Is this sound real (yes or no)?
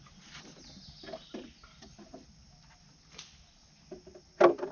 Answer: yes